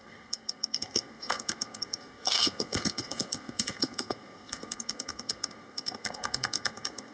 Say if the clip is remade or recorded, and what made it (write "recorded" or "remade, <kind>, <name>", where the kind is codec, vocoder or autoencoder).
remade, codec, SNAC